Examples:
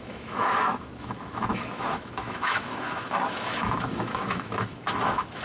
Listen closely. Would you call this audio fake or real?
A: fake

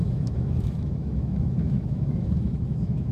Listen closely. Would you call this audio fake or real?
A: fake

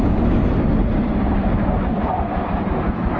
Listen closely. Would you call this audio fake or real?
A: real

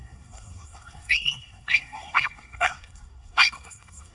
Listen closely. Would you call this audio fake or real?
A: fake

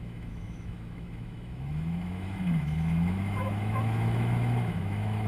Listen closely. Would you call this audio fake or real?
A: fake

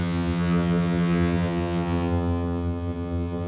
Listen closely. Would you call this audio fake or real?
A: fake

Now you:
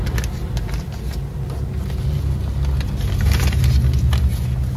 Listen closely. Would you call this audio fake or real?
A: real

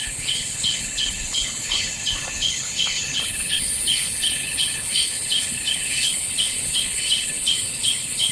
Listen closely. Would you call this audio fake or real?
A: fake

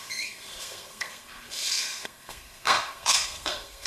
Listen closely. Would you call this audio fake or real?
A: fake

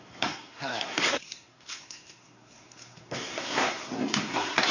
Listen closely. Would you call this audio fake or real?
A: fake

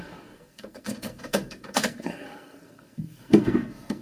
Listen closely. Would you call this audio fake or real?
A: fake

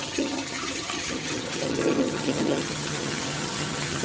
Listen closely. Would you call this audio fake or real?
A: fake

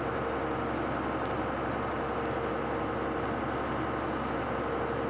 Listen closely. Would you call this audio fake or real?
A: real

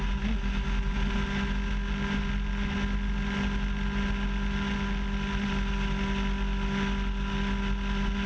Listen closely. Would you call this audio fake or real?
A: real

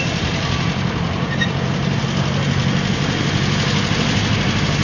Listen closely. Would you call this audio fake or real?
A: real